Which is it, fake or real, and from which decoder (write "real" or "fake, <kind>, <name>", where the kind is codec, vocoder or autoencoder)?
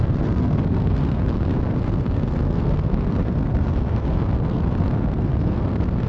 fake, codec, SNAC